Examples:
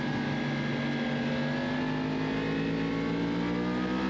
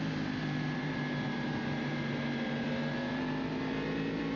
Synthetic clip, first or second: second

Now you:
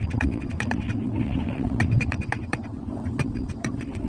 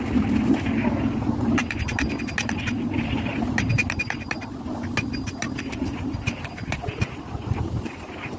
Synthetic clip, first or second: first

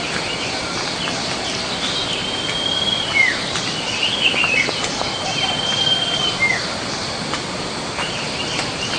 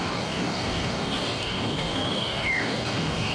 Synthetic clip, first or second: second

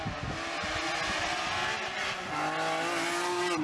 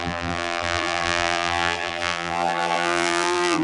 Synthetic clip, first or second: second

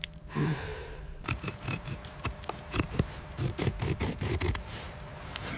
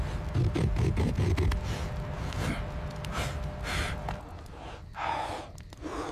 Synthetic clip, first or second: first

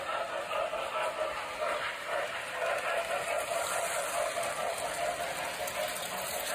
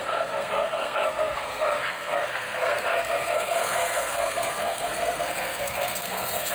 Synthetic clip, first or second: second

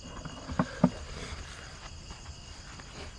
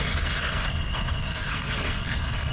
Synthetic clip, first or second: second